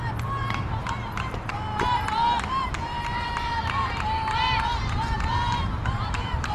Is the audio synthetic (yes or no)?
yes